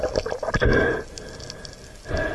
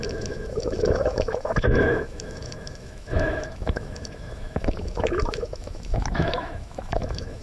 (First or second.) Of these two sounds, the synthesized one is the second